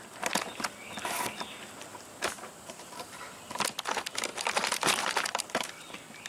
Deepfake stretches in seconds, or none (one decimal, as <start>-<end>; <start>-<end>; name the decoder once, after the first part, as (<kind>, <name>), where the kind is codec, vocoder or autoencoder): 1.9-3.3 (vocoder, BigVGAN v2); 4.3-5.8